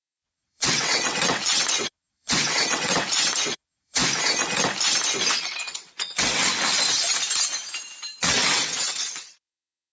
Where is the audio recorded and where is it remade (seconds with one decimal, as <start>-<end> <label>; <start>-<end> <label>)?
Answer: 0.0-4.0 remade; 4.0-5.3 recorded; 5.3-6.5 remade; 6.5-8.2 recorded; 8.2-9.9 remade

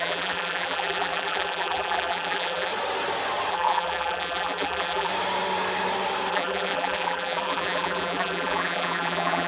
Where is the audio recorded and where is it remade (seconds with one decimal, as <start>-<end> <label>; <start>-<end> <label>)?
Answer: 0.0-2.7 remade; 2.7-3.5 recorded; 3.5-5.1 remade; 5.1-6.3 recorded; 6.3-9.5 remade

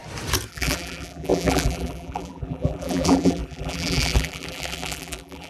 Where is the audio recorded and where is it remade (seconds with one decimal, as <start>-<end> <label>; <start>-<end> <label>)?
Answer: 0.0-0.5 recorded; 0.5-5.5 remade

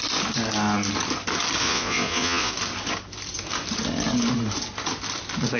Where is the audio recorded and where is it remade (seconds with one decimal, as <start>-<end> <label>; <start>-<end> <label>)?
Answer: 0.0-1.6 recorded; 1.6-2.5 remade; 2.5-5.6 recorded